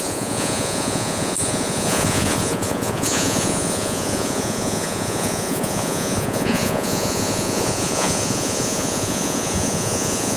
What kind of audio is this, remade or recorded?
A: remade